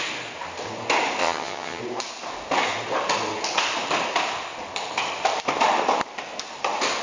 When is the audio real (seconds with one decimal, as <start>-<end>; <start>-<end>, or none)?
0.0-1.2; 1.8-7.0